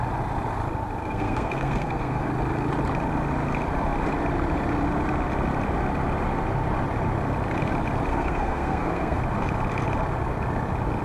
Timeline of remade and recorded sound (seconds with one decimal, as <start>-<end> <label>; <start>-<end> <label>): 0.0-1.0 recorded; 1.0-2.3 remade; 2.3-8.1 recorded; 8.1-9.2 remade; 9.2-11.0 recorded